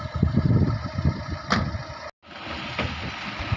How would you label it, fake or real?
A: real